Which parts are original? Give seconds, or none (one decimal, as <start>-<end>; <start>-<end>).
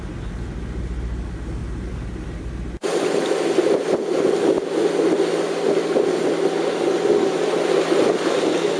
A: 0.0-8.8